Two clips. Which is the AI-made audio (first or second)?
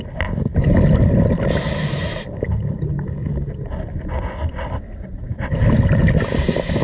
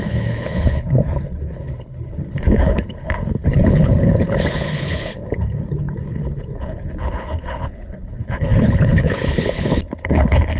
second